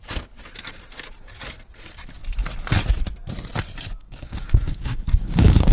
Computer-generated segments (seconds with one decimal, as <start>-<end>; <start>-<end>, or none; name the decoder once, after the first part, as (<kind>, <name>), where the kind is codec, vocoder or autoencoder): 4.0-5.7 (codec, DAC)

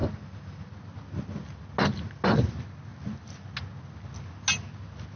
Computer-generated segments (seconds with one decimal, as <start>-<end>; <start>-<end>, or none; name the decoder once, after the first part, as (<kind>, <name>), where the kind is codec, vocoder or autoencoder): none